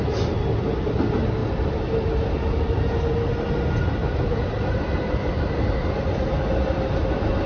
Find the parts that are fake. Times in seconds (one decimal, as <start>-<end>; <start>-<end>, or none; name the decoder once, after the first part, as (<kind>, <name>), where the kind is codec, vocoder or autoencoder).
none